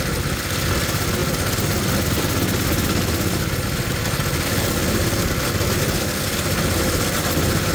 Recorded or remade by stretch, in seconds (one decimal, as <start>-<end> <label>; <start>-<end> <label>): 0.0-7.7 recorded